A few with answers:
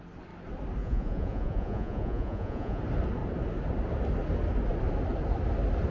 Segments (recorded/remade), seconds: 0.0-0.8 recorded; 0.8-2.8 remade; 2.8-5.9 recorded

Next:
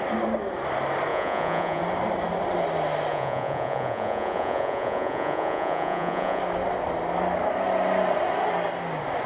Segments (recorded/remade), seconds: 0.0-1.1 recorded; 1.1-1.8 remade; 1.8-3.1 recorded; 3.1-6.4 remade; 6.4-9.3 recorded

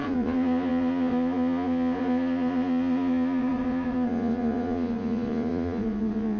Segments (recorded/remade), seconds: 0.0-6.4 remade

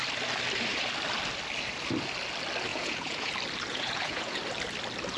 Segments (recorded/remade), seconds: 0.0-2.7 recorded; 2.7-3.3 remade; 3.3-3.7 recorded; 3.7-4.4 remade; 4.4-5.2 recorded

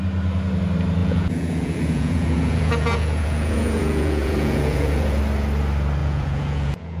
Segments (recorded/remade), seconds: 0.0-1.0 recorded; 1.0-5.2 remade; 5.2-6.0 recorded; 6.0-7.0 remade

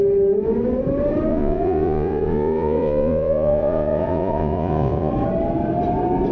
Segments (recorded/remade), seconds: 0.0-1.3 recorded; 1.3-5.1 remade; 5.1-6.3 recorded

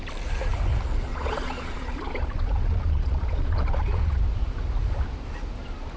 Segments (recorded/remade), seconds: 0.0-1.1 recorded; 1.1-4.2 remade; 4.2-6.0 recorded